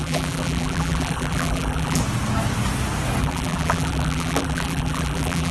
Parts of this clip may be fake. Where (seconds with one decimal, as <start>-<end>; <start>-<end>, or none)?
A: 0.0-2.0; 3.2-5.5